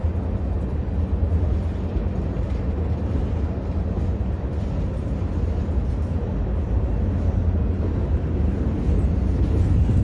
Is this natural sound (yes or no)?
yes